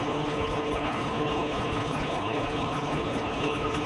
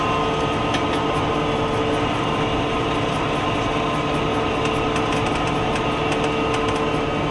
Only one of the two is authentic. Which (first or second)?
second